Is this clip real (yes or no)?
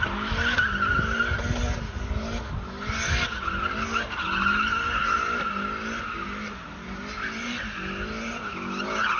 yes